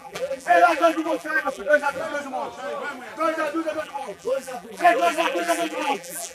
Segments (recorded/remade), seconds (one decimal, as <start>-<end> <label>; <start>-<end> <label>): 0.0-2.0 remade; 2.0-3.8 recorded; 3.8-6.3 remade